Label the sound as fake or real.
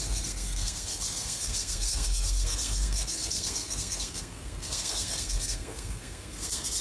fake